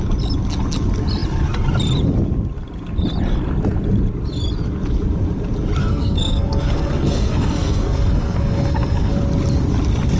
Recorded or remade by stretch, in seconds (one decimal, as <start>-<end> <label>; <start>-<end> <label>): 0.0-5.8 recorded; 5.8-9.2 remade; 9.2-10.2 recorded